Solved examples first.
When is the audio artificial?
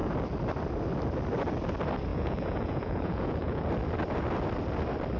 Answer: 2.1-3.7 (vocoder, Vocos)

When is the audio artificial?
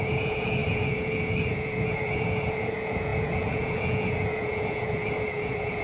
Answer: 0.0-5.8 (vocoder, Vocos)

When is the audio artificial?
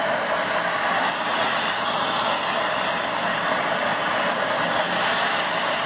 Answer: 1.3-2.0 (vocoder, Vocos)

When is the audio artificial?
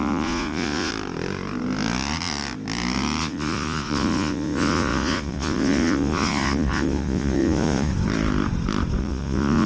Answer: 0.0-0.9 (vocoder, Vocos); 3.2-7.9; 9.0-9.7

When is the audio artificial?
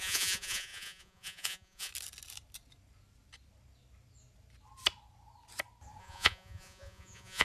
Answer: 0.0-1.9 (vocoder, Vocos); 6.0-7.4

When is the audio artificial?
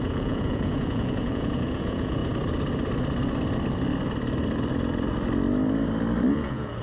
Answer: 0.0-2.2 (vocoder, Vocos); 6.3-6.8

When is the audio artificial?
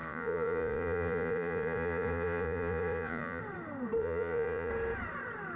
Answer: 0.0-3.4 (vocoder, Vocos); 4.0-4.7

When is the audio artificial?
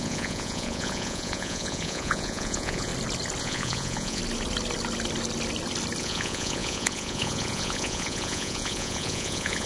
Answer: 0.0-2.9 (vocoder, Vocos); 3.4-4.2; 6.0-9.7